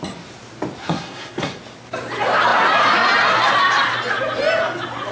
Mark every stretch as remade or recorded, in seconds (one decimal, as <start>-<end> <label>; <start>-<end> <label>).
0.0-0.8 recorded; 0.8-1.6 remade; 1.6-5.1 recorded